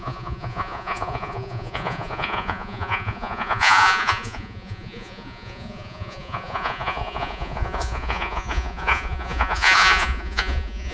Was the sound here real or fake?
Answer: fake